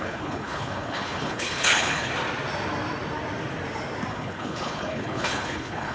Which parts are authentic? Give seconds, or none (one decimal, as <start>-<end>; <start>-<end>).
2.1-4.1

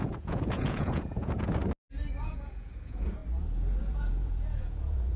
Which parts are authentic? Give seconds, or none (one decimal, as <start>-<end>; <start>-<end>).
1.6-2.2; 3.2-3.8

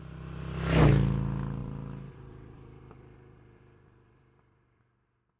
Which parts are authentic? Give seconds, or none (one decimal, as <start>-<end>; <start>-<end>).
0.0-1.6; 4.8-5.4

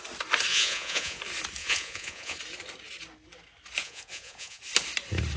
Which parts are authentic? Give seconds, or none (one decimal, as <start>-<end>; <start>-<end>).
0.0-0.5; 1.2-1.6; 2.4-3.8; 4.6-5.4

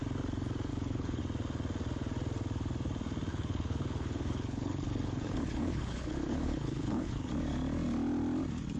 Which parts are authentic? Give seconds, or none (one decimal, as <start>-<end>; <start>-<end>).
0.0-0.7; 1.2-3.3; 7.3-8.8

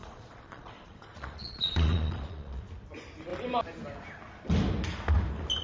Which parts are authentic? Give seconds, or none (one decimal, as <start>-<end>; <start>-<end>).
2.6-5.6

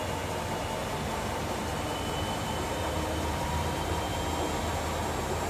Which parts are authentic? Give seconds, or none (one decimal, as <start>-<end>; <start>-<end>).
0.0-0.8; 4.1-5.5

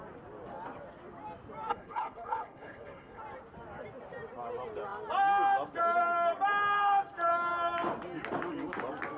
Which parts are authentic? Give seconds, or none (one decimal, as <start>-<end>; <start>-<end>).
0.0-1.7; 3.2-9.2